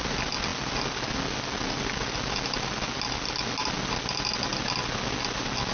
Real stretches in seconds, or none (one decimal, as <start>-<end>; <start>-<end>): 0.0-5.7